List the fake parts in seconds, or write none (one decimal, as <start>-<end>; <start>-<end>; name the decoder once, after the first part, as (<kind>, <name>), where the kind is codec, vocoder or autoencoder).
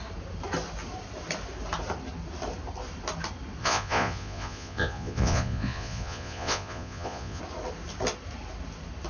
3.6-7.4 (vocoder, Vocos)